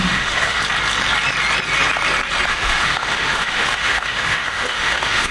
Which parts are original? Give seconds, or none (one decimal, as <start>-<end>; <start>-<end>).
0.6-2.5